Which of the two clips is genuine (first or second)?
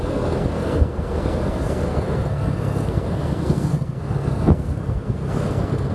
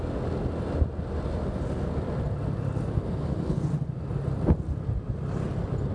second